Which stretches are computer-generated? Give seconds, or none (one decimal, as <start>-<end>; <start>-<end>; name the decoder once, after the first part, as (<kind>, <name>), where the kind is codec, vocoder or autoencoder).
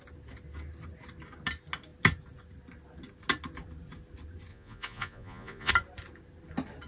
4.5-5.7 (vocoder, Vocos)